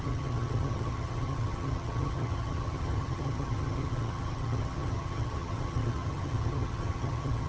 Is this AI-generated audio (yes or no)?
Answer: yes